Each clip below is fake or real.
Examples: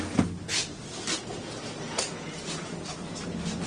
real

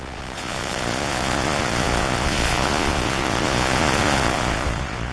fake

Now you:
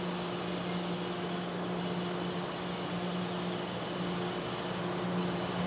real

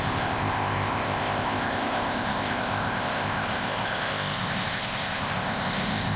fake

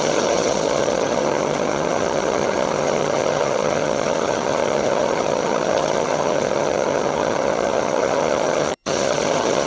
fake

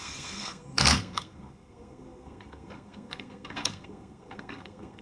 fake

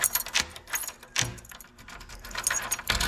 real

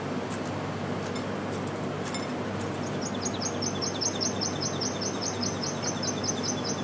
real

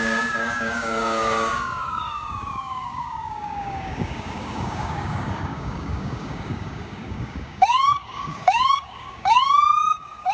fake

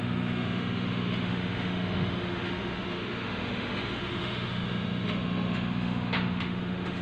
fake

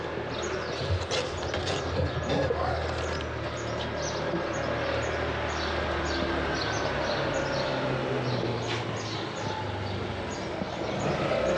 real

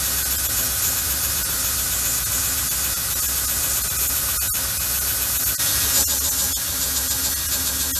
real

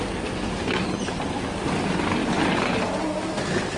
real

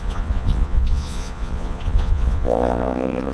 fake